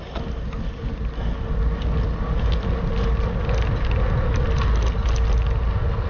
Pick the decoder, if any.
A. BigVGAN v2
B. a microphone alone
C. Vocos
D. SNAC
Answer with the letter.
B